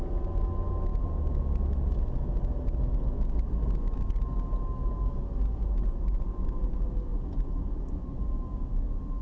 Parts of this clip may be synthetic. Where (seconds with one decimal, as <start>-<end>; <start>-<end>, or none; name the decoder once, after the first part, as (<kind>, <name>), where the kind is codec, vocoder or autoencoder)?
7.1-7.9 (vocoder, BigVGAN v2)

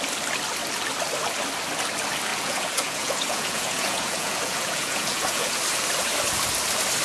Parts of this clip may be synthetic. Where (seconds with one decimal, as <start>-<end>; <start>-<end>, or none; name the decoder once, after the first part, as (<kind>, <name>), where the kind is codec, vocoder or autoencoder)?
2.3-5.6 (vocoder, Vocos)

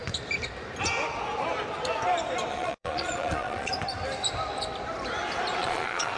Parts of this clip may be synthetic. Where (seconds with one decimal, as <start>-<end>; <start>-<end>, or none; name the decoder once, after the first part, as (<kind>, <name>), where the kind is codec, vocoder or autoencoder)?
2.5-3.7 (vocoder, Vocos); 5.6-6.2

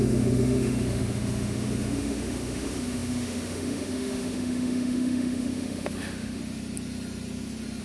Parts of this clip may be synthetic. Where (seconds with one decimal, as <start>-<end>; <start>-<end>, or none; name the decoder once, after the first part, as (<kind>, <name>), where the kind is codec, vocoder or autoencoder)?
0.0-6.4 (autoencoder, DAC-VAE)